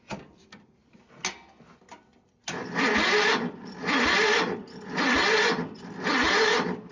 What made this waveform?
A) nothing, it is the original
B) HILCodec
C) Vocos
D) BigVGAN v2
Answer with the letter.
A